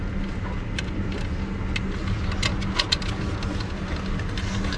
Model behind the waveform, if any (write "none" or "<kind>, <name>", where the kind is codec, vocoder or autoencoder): none